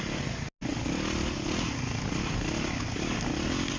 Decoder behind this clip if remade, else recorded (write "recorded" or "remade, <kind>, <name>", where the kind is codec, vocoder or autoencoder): recorded